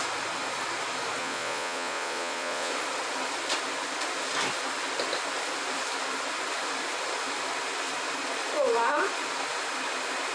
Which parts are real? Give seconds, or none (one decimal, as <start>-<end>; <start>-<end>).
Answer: 0.0-1.2; 2.7-10.3